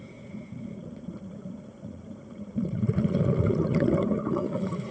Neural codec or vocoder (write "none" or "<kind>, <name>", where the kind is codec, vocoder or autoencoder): vocoder, Vocos